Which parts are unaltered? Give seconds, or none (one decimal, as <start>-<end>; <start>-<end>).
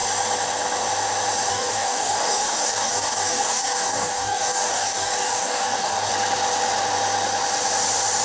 0.0-1.5; 6.1-8.2